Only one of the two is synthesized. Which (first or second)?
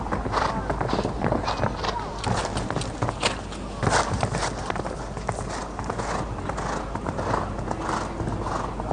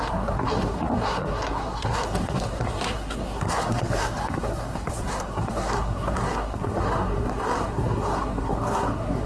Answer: second